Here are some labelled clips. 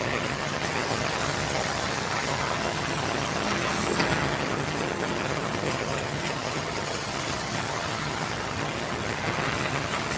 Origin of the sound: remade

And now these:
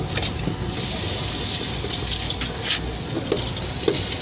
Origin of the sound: recorded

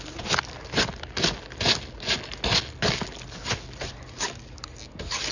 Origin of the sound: recorded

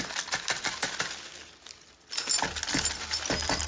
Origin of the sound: recorded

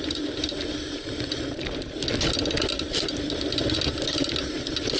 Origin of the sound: recorded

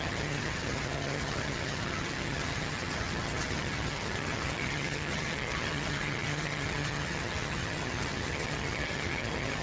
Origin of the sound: remade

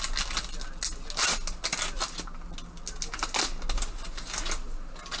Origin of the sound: recorded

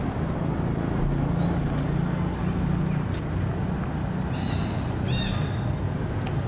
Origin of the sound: recorded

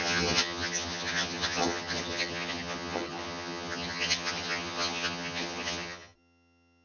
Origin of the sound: remade